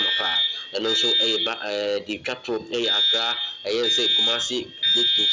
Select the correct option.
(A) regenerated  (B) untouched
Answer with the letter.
B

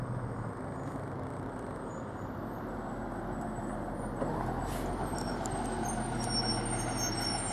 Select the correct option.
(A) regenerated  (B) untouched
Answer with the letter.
B